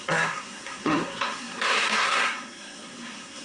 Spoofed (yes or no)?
yes